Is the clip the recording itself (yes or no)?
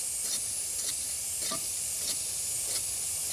yes